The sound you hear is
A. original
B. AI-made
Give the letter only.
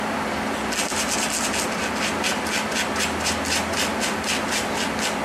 A